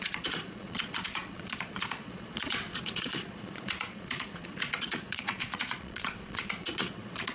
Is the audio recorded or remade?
remade